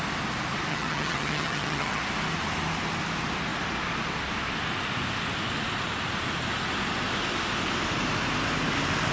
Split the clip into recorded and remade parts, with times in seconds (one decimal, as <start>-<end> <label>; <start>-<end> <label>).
0.0-0.7 recorded; 0.7-2.0 remade; 2.0-9.1 recorded